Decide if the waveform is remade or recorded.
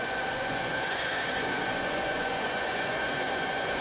remade